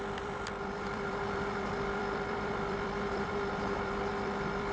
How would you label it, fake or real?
fake